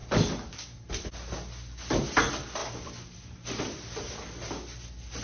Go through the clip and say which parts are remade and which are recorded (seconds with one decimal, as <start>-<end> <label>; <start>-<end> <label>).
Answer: 0.0-5.2 recorded